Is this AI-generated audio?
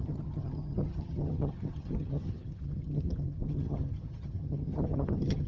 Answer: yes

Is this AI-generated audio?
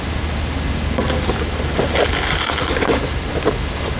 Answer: no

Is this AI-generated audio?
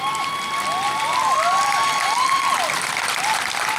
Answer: yes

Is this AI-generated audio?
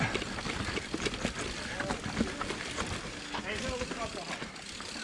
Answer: no